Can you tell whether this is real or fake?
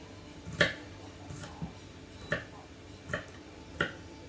real